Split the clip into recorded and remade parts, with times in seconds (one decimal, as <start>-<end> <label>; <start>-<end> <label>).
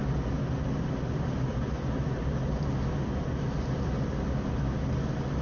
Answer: 0.0-5.4 recorded